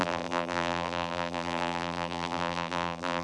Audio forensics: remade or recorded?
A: remade